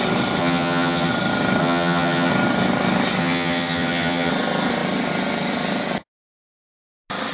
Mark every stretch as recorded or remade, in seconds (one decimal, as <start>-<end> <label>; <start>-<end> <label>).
0.0-0.4 recorded; 0.4-1.1 remade; 1.1-1.6 recorded; 1.6-2.3 remade; 2.3-3.2 recorded; 3.2-4.3 remade; 4.3-7.3 recorded